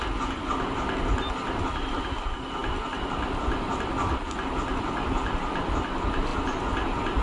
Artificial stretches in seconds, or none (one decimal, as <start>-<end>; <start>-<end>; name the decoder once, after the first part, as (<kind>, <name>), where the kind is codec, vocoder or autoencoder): none